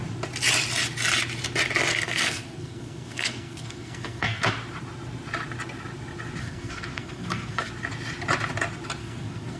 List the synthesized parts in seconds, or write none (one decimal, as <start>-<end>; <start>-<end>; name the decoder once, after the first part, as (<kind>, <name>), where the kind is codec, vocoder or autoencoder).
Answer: 1.9-4.5 (codec, SNAC); 6.4-7.7; 9.0-9.6